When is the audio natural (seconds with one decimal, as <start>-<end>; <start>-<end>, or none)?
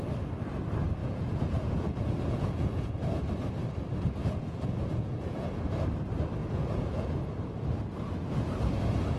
0.0-1.0; 3.2-4.2; 5.6-6.4; 7.3-9.2